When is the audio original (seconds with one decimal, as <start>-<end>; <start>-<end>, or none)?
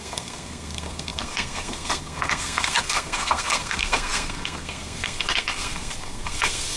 none